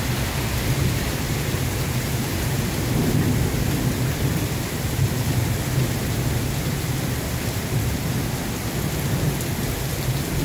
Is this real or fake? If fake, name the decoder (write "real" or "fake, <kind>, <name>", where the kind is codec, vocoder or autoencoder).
fake, vocoder, BigVGAN v2